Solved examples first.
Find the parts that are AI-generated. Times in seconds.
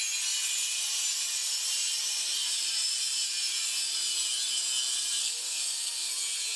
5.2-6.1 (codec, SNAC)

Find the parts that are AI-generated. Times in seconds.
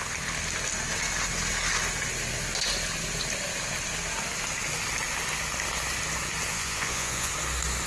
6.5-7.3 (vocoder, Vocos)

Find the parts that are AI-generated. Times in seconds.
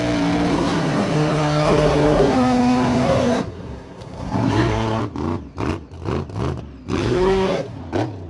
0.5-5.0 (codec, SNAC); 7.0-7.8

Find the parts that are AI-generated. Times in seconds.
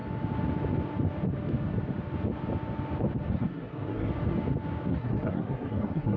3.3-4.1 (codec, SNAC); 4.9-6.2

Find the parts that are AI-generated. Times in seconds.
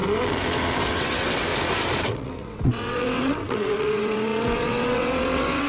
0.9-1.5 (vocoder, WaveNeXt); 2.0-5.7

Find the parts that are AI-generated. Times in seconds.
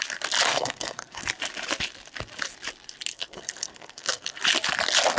0.5-1.2 (codec, SNAC); 3.1-4.4